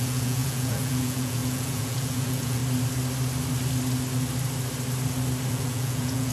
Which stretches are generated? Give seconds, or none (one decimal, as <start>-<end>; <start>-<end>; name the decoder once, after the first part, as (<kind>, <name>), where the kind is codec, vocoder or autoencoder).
0.0-2.6 (vocoder, Vocos); 5.5-6.3